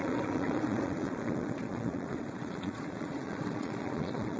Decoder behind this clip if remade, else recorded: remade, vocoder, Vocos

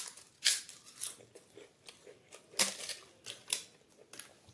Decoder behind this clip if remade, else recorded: recorded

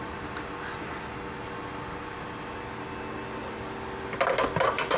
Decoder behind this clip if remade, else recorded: recorded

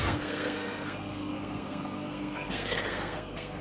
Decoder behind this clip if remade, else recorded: remade, codec, SNAC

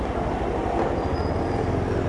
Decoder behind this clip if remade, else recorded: recorded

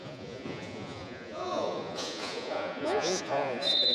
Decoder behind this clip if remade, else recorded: remade, vocoder, Vocos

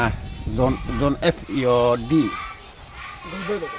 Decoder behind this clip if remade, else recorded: recorded